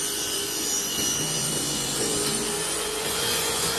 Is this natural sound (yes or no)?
no